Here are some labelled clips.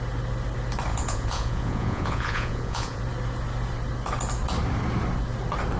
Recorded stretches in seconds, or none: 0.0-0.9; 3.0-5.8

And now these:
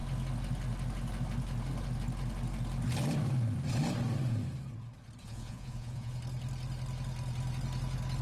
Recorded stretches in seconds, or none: 0.0-5.2; 6.2-8.2